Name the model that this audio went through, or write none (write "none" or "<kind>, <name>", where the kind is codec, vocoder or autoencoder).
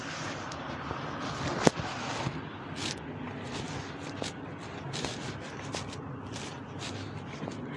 none